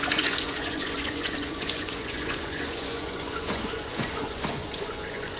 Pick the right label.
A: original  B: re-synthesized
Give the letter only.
B